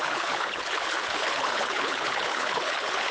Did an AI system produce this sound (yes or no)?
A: yes